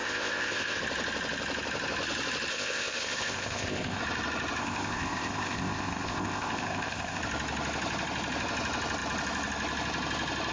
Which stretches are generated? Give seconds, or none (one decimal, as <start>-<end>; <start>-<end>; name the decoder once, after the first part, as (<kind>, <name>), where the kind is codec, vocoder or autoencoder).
0.0-0.8 (codec, ZipCodec); 2.5-4.0; 4.6-7.2